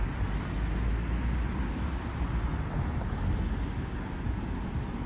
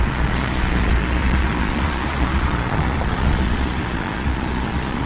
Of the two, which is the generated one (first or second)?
second